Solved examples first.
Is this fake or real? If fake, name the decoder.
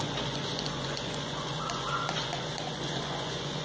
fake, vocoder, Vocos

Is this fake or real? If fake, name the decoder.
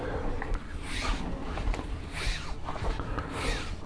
real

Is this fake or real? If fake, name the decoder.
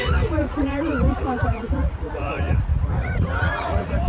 fake, vocoder, Vocos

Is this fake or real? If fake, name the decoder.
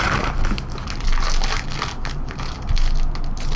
real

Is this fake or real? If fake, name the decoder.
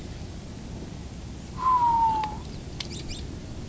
real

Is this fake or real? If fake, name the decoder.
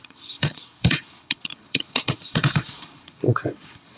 fake, vocoder, Vocos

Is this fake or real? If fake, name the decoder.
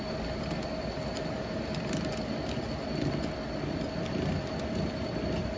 real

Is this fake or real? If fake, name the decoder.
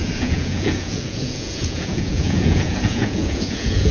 fake, vocoder, Vocos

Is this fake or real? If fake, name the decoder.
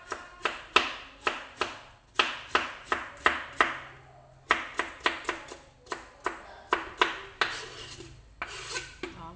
real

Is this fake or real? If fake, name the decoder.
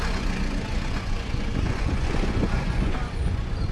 fake, vocoder, Vocos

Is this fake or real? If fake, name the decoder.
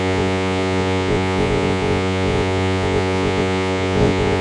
fake, vocoder, Vocos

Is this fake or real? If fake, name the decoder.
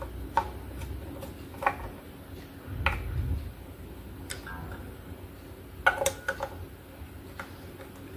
real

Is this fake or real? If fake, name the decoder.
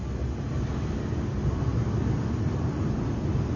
real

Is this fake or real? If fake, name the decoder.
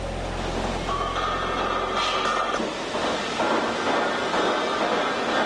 real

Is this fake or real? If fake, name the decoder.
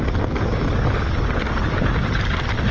real